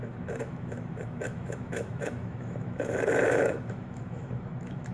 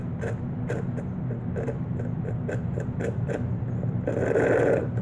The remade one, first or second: first